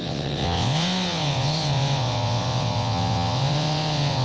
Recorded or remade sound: remade